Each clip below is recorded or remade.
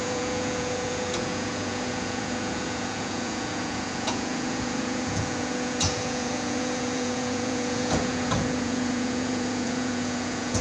remade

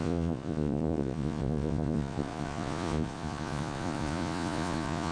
remade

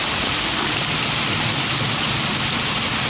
recorded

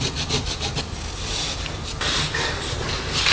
recorded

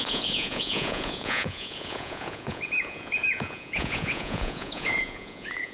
remade